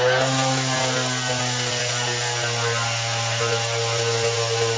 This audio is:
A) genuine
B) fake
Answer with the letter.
A